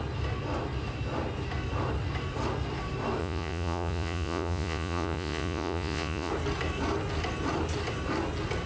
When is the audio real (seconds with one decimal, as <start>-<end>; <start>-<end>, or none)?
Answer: 0.0-3.2; 6.3-8.7